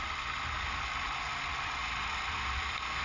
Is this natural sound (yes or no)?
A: yes